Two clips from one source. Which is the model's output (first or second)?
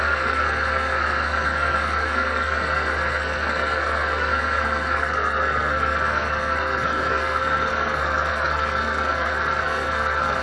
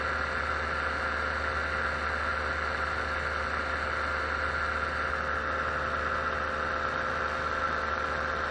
first